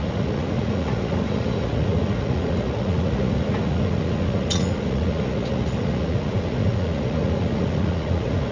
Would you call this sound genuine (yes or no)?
no